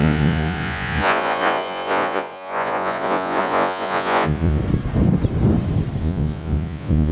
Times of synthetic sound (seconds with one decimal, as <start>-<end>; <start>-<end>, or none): 0.0-4.6; 6.0-7.1